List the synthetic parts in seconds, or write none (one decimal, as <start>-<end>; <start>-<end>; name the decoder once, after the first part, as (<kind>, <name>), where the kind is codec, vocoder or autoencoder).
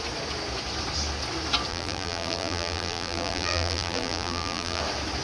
1.7-4.8 (vocoder, BigVGAN v2)